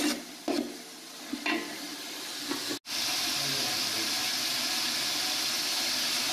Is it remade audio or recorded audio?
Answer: recorded